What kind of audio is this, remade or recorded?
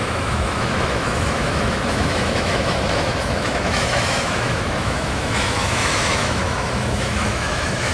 remade